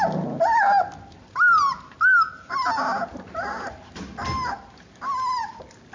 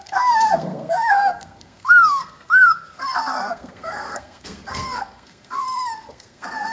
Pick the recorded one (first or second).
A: first